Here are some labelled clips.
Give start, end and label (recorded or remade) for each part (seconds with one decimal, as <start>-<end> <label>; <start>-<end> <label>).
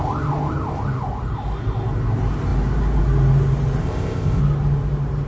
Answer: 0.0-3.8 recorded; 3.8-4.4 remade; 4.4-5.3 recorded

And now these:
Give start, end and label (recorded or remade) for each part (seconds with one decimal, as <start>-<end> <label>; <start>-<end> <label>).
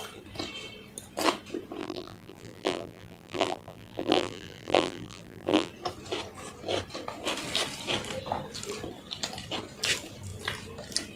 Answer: 0.0-1.8 recorded; 1.8-5.7 remade; 5.7-11.2 recorded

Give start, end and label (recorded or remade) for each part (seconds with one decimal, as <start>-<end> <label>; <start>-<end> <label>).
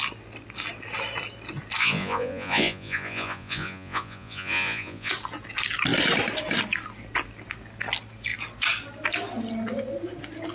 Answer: 0.0-1.8 recorded; 1.8-5.1 remade; 5.1-10.5 recorded